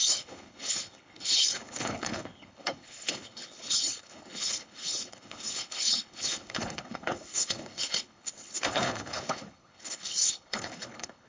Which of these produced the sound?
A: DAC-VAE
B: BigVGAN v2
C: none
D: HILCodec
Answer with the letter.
D